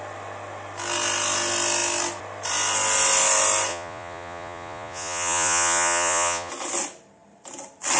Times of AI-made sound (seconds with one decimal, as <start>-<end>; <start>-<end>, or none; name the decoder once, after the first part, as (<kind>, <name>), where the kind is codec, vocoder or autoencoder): 3.7-6.5 (vocoder, Vocos)